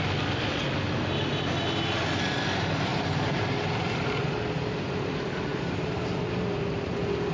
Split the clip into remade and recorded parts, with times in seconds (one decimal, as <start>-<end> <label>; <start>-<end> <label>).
0.0-7.3 recorded